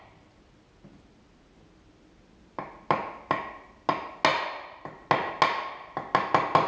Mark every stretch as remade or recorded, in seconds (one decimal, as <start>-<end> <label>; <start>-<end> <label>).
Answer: 0.0-6.7 recorded